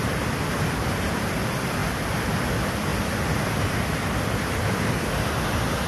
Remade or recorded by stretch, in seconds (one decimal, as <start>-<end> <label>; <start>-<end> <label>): 0.0-5.9 recorded